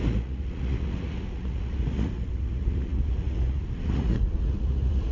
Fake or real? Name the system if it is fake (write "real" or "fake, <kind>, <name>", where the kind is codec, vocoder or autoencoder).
fake, vocoder, Vocos